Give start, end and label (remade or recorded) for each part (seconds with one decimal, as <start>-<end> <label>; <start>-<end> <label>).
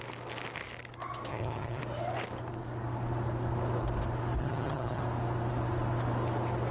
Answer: 0.0-1.3 recorded; 1.3-1.8 remade; 1.8-4.4 recorded; 4.4-5.0 remade; 5.0-6.7 recorded